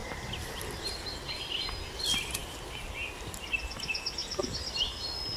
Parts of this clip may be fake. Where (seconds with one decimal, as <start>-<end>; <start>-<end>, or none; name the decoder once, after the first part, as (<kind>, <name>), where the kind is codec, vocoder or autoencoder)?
0.0-1.6 (vocoder, BigVGAN v2); 4.2-4.9